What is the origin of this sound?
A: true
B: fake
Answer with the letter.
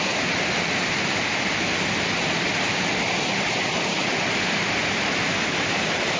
A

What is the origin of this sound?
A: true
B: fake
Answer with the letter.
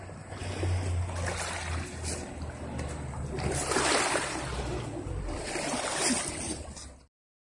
B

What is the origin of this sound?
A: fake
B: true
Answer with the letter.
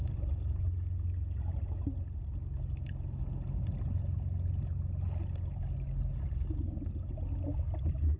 B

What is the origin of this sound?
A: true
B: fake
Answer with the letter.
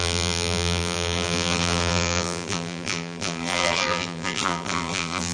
B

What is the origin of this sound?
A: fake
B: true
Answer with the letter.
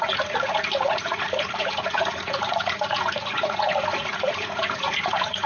A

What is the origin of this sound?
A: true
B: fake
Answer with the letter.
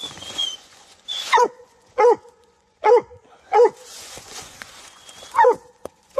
B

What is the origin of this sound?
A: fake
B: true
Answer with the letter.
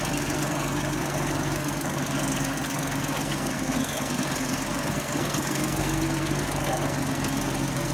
A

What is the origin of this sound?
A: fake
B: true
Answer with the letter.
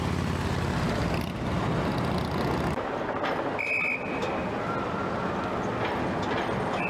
B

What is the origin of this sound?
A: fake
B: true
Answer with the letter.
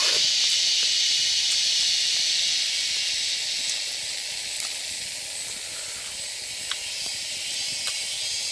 B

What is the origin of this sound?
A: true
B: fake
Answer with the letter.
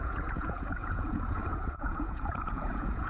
B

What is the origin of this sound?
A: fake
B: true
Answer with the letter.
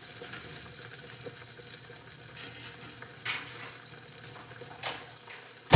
B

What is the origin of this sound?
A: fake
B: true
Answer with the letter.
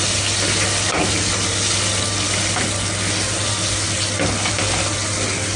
B